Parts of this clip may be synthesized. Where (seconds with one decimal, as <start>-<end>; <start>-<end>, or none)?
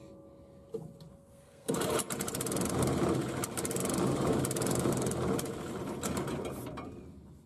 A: 1.1-1.7